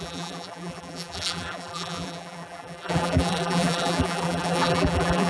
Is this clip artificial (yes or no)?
yes